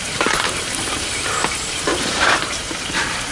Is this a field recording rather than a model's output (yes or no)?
no